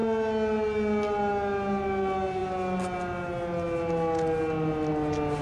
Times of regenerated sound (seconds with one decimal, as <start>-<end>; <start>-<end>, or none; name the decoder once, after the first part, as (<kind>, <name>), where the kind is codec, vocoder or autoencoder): none